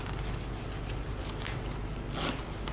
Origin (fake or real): real